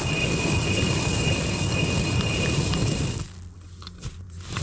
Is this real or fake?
real